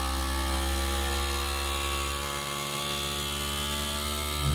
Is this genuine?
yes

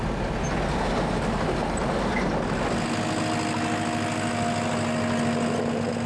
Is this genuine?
yes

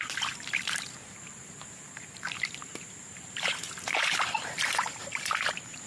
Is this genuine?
no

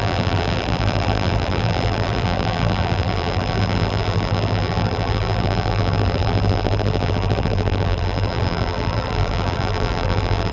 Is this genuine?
no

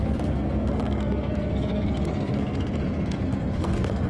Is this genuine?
no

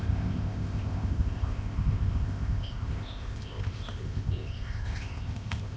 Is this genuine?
no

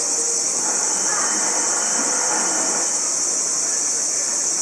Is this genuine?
yes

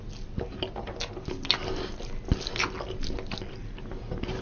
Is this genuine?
yes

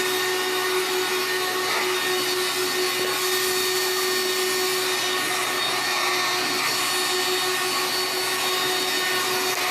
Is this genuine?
yes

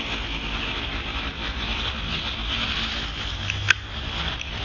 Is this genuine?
yes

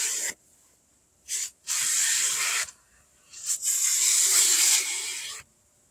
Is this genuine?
no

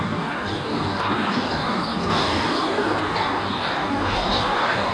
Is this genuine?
no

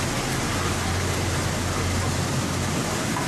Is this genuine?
yes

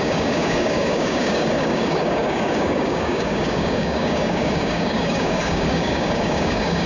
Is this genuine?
no